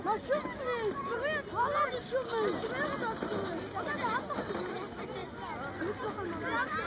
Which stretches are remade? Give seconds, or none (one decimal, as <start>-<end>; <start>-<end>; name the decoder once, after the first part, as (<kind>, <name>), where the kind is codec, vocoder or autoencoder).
none